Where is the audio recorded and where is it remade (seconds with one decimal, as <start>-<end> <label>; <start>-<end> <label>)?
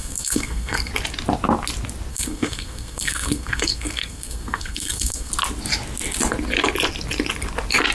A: 0.0-0.9 remade; 0.9-2.1 recorded; 2.1-5.3 remade; 5.3-7.9 recorded